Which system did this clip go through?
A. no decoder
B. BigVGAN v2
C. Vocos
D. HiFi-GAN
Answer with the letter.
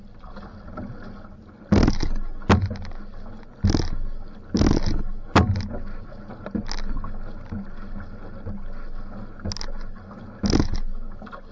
A